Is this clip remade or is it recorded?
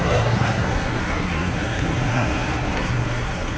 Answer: remade